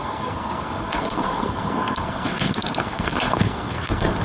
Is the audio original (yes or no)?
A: no